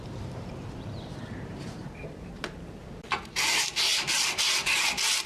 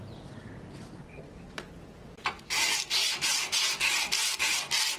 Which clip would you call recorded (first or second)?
second